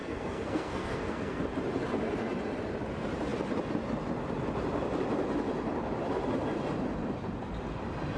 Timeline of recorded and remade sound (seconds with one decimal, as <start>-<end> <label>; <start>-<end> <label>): 0.0-1.4 remade; 1.4-8.2 recorded